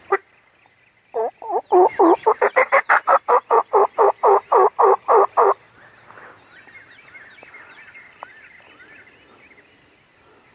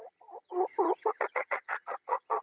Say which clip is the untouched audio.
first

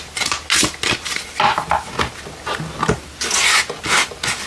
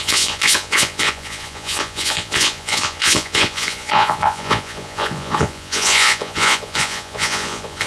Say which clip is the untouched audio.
first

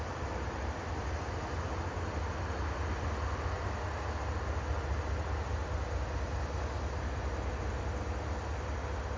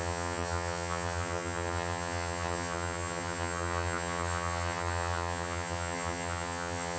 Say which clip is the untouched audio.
first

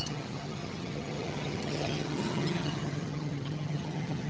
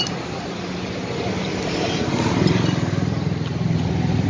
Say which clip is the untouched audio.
second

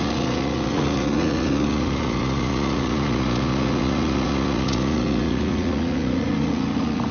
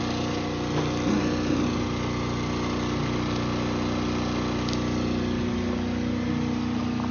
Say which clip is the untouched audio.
second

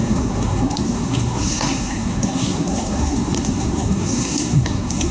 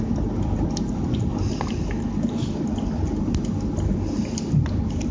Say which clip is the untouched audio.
second